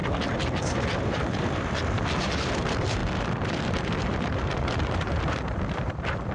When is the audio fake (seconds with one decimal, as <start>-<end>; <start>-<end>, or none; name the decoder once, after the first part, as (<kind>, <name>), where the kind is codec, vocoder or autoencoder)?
1.0-6.3 (vocoder, BigVGAN v2)